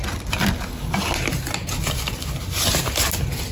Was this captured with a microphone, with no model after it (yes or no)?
yes